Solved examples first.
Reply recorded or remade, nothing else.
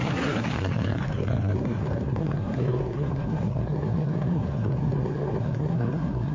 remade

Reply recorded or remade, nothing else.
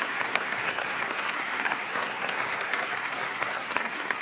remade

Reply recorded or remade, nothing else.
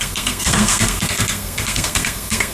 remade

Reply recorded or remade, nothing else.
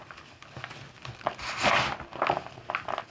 recorded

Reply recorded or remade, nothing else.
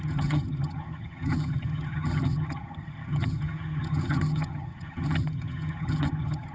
remade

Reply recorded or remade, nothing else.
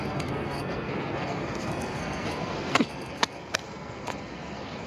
remade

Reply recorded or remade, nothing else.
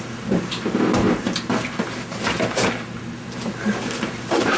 recorded